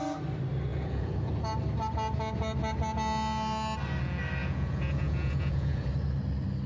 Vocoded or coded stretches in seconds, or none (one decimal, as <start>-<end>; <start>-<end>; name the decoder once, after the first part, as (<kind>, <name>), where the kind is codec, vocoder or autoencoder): 0.7-1.3 (vocoder, Vocos); 4.4-5.9